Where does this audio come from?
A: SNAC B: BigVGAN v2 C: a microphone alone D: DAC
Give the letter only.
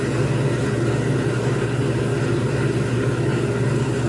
C